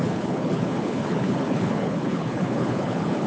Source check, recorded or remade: remade